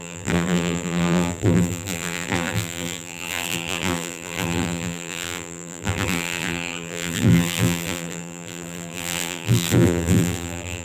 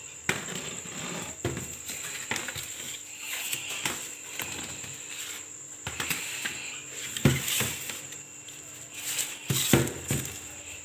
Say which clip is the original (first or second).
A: second